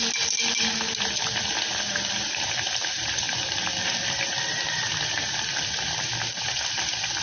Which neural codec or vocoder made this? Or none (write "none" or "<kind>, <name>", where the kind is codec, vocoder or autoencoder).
none